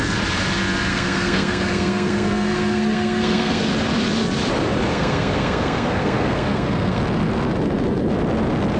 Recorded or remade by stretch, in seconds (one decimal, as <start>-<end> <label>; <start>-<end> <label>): 0.0-0.9 recorded; 0.9-3.7 remade; 3.7-4.9 recorded; 4.9-7.0 remade; 7.0-8.8 recorded